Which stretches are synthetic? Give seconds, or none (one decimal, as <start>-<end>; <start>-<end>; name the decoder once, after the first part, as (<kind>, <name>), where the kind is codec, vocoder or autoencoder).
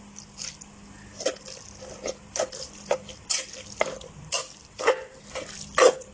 none